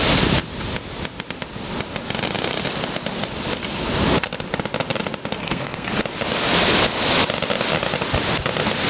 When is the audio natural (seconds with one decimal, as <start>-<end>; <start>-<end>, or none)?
0.0-5.4; 5.9-8.9

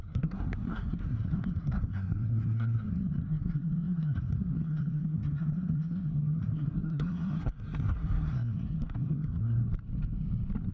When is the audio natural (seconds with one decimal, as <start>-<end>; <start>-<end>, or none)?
9.6-10.7